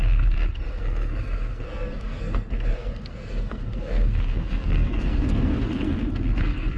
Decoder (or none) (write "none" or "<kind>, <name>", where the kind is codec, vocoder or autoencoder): codec, SNAC